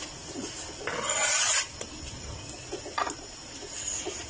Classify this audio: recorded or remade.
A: recorded